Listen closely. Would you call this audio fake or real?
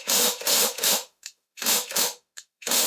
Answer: fake